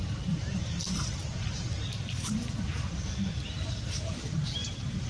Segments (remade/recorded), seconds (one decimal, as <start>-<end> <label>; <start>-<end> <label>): 0.0-5.1 remade